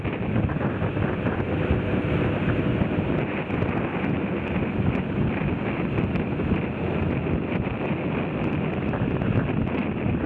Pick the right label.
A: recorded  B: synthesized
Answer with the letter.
A